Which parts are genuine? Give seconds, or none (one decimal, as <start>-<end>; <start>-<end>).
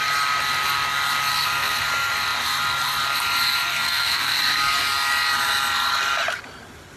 0.0-1.3; 1.9-3.7; 4.4-7.0